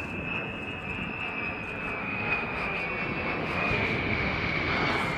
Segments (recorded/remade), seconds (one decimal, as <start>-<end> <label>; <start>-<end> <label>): 0.0-2.0 recorded; 2.0-2.8 remade; 2.8-3.4 recorded; 3.4-4.7 remade; 4.7-5.2 recorded